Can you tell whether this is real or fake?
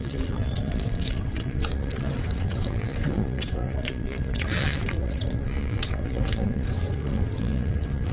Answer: fake